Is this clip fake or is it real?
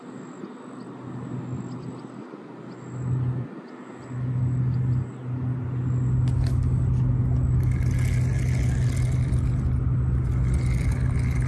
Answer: real